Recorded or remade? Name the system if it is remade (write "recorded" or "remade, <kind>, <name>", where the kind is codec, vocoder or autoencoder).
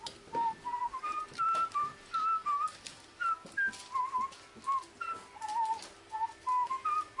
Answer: recorded